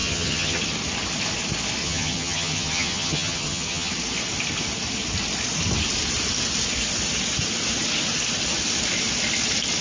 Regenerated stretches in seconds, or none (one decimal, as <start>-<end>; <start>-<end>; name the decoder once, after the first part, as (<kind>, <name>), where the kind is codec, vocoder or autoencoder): 0.0-0.6 (vocoder, HiFi-GAN); 1.8-3.9